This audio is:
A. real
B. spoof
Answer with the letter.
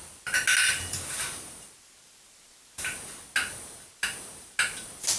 A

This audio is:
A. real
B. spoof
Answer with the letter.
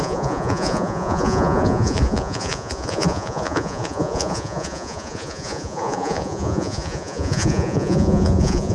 B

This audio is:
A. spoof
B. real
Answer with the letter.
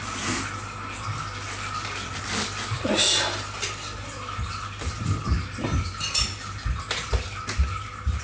B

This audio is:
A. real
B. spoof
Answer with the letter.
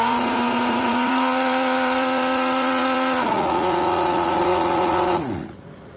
B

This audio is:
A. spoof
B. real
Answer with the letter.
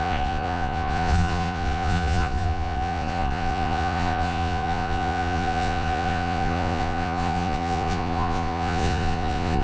A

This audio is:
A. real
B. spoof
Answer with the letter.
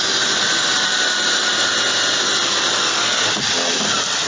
A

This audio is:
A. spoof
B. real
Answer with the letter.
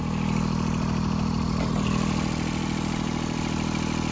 B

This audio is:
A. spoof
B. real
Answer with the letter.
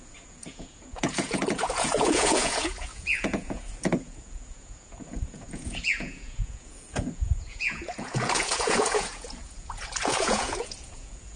A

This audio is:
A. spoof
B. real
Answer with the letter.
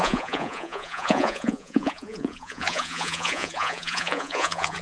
A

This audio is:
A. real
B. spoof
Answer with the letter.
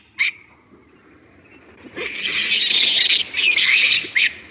A